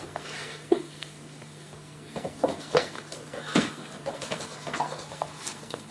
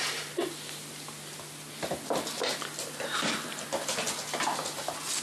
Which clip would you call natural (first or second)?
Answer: second